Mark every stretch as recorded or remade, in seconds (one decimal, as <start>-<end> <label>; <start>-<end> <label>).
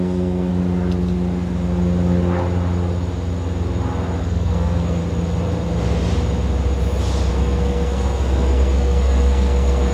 0.0-0.5 remade; 0.5-4.2 recorded; 4.2-5.0 remade; 5.0-7.3 recorded; 7.3-9.9 remade